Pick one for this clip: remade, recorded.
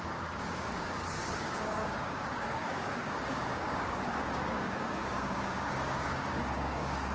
remade